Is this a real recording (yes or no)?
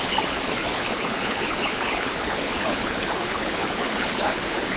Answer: no